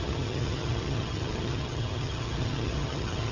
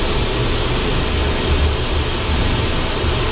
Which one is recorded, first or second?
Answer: second